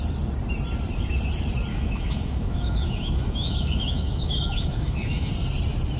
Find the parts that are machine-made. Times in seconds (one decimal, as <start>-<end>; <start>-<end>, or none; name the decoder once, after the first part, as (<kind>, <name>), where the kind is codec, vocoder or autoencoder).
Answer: 1.7-5.3 (autoencoder, DAC-VAE)